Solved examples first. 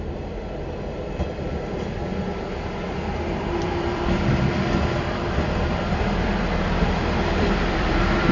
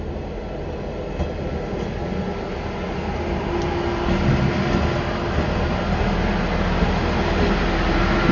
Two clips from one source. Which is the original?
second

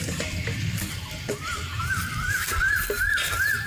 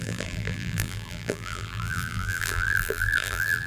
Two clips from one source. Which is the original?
first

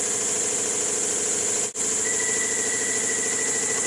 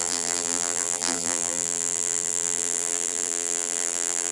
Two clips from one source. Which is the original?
first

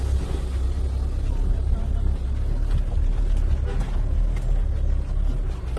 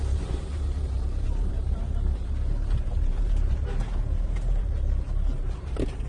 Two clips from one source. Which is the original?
first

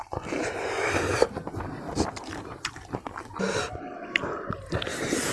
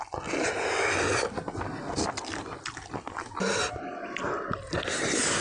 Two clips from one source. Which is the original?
second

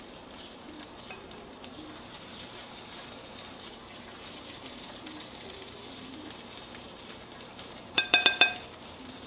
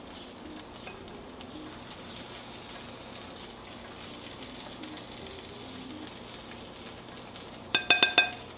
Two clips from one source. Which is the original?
second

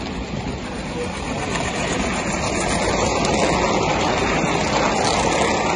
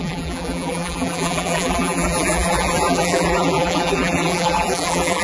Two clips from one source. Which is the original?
first